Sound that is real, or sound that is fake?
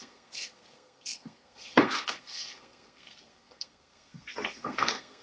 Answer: fake